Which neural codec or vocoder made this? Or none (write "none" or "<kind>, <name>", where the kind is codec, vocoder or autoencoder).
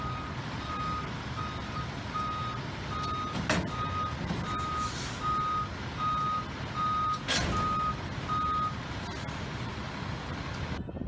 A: none